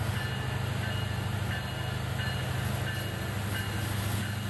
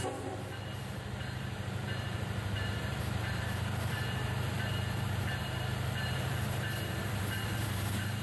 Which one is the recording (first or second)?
first